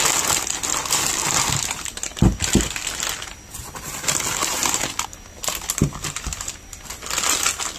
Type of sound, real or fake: real